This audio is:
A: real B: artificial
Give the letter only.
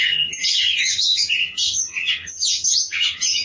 B